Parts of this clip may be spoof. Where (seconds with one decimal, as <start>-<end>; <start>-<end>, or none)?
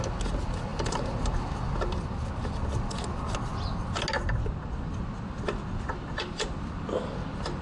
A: none